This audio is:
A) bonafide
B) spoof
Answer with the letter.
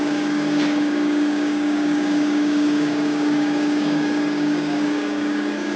B